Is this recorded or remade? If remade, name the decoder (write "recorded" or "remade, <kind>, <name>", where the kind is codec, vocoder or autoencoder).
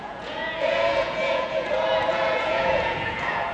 remade, vocoder, Vocos